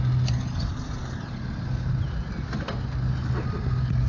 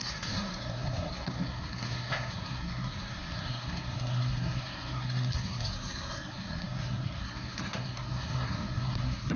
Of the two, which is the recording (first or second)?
first